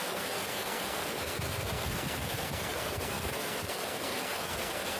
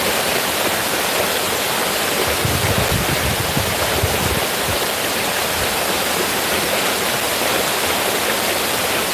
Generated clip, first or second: first